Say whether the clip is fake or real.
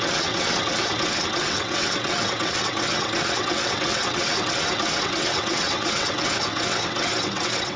fake